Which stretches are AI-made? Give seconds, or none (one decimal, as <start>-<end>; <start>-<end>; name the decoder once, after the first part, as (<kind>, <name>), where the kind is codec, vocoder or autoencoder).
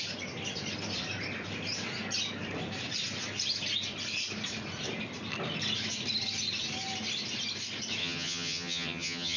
8.0-9.4 (vocoder, HiFi-GAN)